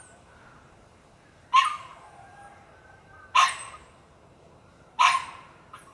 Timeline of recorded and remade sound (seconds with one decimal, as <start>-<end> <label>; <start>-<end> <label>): 0.0-1.9 recorded; 1.9-4.1 remade; 4.1-5.9 recorded